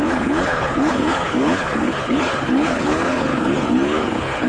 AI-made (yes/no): yes